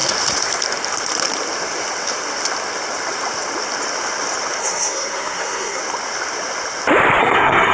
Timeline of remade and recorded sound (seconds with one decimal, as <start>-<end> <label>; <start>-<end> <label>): 0.0-4.6 recorded; 4.6-5.8 remade; 5.8-7.2 recorded; 7.2-7.7 remade